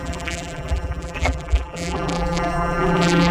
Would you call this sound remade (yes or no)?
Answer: yes